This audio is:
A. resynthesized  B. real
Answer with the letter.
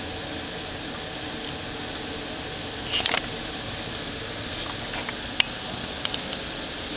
B